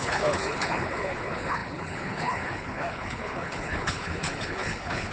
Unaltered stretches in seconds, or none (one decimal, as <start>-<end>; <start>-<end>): none